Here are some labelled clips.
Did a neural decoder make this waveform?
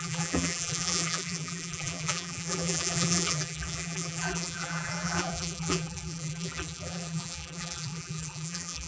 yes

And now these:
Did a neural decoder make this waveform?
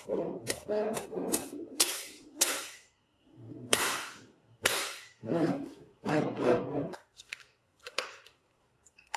yes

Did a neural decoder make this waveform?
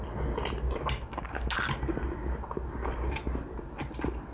no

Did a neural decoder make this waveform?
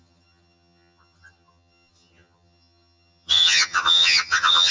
yes